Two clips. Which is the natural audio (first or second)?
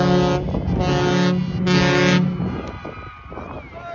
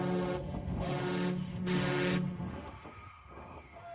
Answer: first